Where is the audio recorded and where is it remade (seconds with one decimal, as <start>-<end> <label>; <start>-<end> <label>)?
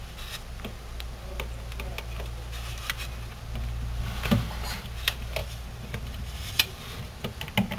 0.0-5.4 recorded; 5.4-6.7 remade; 6.7-7.8 recorded